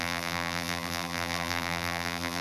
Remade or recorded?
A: remade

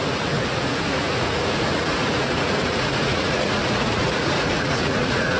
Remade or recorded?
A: remade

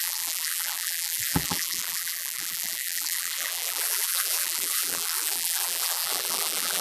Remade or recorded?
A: remade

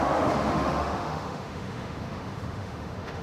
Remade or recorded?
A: remade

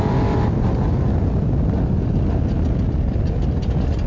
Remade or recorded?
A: recorded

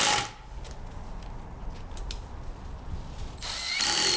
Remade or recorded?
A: recorded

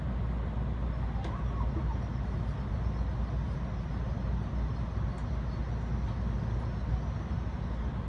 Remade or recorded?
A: recorded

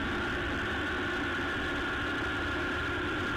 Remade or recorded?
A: recorded